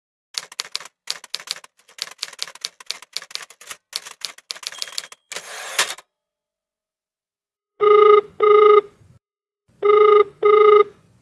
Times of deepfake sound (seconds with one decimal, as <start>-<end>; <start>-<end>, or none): 6.8-11.2